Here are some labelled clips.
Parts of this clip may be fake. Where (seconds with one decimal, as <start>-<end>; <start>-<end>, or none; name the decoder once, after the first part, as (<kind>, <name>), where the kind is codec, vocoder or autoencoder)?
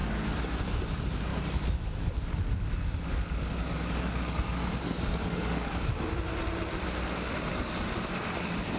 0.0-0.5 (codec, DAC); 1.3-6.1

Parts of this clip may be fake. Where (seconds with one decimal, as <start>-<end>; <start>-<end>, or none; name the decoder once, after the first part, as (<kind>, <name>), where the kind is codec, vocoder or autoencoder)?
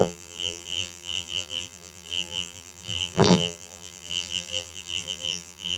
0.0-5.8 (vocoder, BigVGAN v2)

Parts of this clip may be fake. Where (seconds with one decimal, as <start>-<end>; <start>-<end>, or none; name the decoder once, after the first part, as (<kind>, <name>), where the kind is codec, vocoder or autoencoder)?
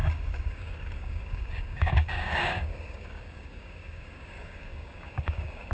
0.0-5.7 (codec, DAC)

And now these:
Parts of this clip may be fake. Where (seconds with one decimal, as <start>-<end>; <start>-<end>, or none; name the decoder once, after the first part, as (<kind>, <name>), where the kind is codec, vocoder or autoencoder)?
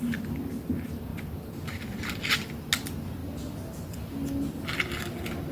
none